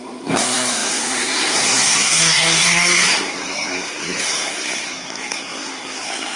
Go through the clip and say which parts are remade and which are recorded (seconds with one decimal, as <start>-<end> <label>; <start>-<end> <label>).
0.0-6.4 remade